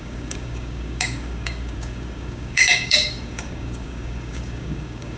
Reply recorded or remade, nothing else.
remade